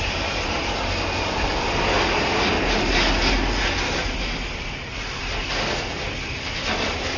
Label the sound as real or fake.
real